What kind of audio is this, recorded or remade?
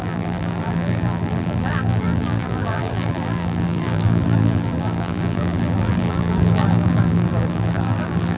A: remade